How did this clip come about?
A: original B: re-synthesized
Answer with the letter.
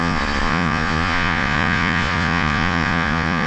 B